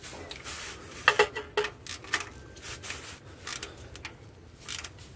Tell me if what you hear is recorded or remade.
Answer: recorded